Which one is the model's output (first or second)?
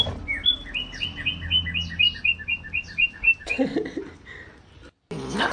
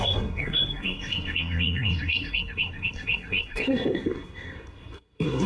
second